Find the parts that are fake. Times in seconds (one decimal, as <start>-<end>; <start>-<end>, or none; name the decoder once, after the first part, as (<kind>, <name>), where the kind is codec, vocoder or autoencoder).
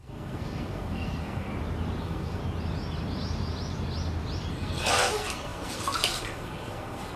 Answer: 0.0-1.5 (codec, SNAC); 2.0-2.4; 4.5-7.2